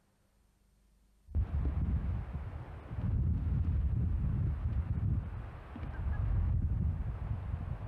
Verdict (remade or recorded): recorded